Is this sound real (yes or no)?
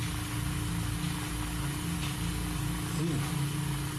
yes